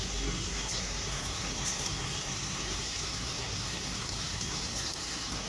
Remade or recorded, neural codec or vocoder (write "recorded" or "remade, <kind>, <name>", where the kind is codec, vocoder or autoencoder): remade, codec, SNAC